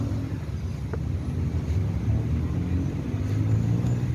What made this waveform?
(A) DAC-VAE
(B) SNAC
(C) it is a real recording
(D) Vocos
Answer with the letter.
C